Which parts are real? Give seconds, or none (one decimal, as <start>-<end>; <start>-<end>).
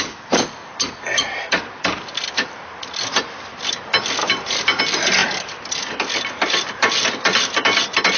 0.0-0.6; 3.7-4.2; 4.8-5.2; 5.8-8.2